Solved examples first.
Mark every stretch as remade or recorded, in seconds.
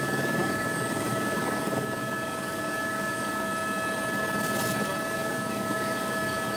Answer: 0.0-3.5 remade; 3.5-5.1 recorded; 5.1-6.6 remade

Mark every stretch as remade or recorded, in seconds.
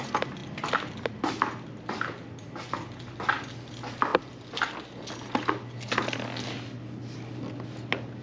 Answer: 0.0-8.2 recorded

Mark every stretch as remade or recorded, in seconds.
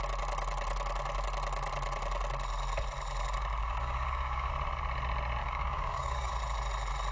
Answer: 0.0-3.6 recorded; 3.6-4.5 remade; 4.5-5.4 recorded; 5.4-6.3 remade; 6.3-7.1 recorded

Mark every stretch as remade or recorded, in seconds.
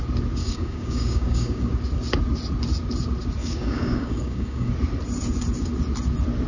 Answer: 0.0-0.4 recorded; 0.4-1.7 remade; 1.7-3.4 recorded; 3.4-4.7 remade; 4.7-6.5 recorded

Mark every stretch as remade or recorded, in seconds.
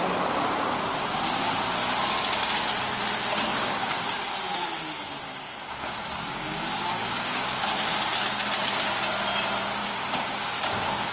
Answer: 0.0-3.5 recorded; 3.5-7.6 remade; 7.6-9.8 recorded; 9.8-11.1 remade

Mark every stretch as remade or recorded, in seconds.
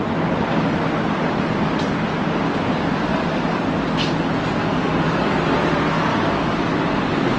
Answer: 0.0-3.1 recorded; 3.1-3.7 remade; 3.7-4.6 recorded; 4.6-5.4 remade; 5.4-6.1 recorded; 6.1-6.7 remade; 6.7-7.4 recorded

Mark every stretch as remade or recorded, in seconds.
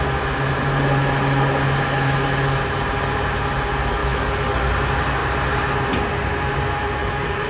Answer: 0.0-4.0 recorded; 4.0-4.7 remade; 4.7-7.0 recorded; 7.0-7.5 remade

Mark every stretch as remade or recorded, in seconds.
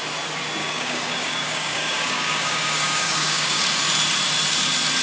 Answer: 0.0-0.6 recorded; 0.6-3.6 remade; 3.6-5.0 recorded